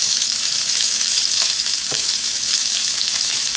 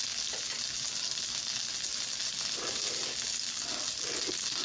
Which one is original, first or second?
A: second